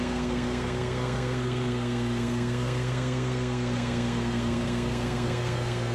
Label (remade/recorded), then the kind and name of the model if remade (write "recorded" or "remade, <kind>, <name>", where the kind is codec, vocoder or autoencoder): remade, codec, SNAC